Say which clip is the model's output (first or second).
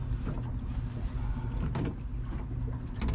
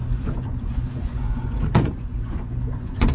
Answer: second